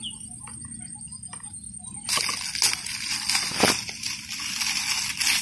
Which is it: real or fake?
real